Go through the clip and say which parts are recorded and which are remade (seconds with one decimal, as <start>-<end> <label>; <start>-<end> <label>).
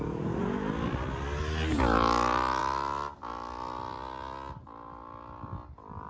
0.0-6.1 recorded